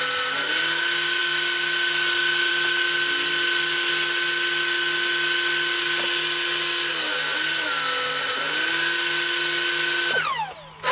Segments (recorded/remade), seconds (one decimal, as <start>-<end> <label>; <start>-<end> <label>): 0.0-10.9 recorded